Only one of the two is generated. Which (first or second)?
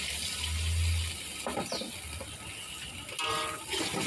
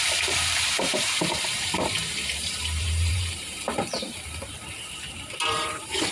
second